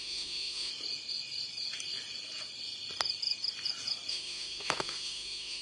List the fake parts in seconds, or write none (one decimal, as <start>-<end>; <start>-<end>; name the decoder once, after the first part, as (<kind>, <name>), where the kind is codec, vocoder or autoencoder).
0.0-0.7 (autoencoder, DAC-VAE); 4.1-5.6